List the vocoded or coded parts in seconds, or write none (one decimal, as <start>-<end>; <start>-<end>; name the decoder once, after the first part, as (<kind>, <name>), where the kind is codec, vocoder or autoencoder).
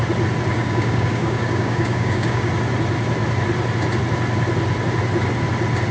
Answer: 0.5-2.5 (codec, DAC)